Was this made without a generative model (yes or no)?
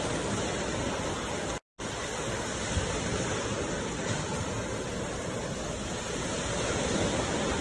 yes